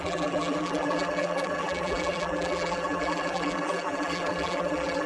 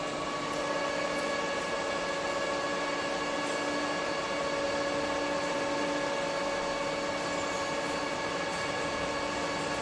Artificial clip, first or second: first